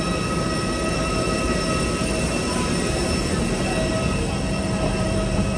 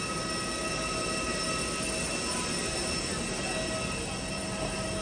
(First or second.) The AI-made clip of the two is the first